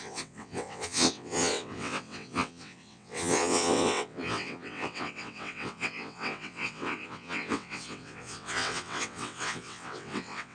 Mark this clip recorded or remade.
remade